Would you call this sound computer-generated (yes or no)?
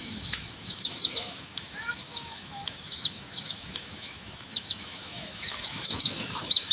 yes